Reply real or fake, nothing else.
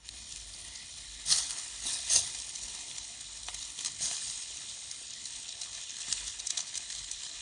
fake